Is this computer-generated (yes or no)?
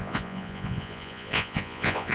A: yes